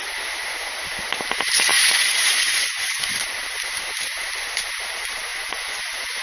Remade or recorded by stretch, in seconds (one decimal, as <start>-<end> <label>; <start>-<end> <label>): 0.0-1.7 recorded; 1.7-3.2 remade; 3.2-5.3 recorded; 5.3-5.8 remade; 5.8-6.2 recorded